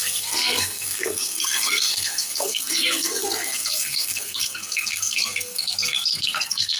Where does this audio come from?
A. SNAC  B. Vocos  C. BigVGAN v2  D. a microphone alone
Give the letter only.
A